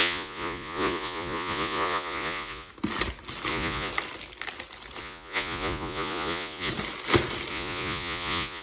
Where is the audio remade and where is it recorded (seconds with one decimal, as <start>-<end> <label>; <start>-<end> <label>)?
0.0-2.7 remade; 2.7-3.5 recorded; 3.5-3.9 remade; 3.9-5.0 recorded; 5.0-6.7 remade; 6.7-7.5 recorded; 7.5-8.6 remade